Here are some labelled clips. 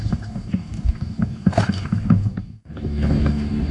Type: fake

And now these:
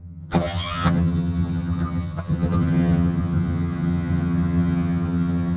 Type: fake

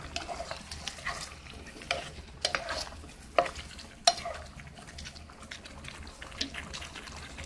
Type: real